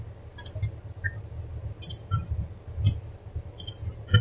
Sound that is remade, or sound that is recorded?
recorded